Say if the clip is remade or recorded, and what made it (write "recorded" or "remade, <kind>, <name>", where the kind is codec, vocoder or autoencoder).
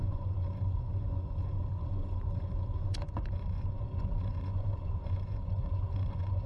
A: remade, vocoder, Vocos